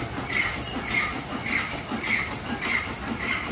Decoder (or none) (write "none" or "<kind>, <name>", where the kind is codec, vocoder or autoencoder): none